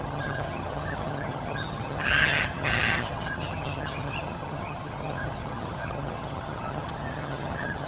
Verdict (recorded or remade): remade